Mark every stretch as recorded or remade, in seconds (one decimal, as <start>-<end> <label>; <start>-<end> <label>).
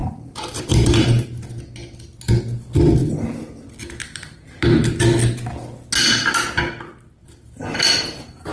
0.0-1.5 remade; 1.5-7.2 recorded; 7.2-8.5 remade